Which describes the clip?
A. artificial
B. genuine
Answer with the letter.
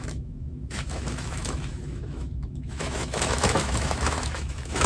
A